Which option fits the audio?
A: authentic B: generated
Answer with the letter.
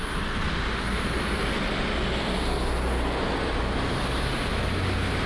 A